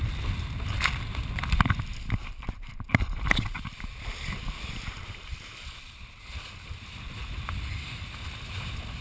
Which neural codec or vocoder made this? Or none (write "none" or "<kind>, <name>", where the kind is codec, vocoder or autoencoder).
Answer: none